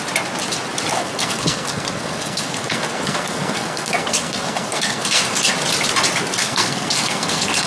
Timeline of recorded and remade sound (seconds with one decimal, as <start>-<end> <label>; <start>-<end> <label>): 0.0-0.9 recorded; 0.9-5.5 remade; 5.5-6.4 recorded; 6.4-7.7 remade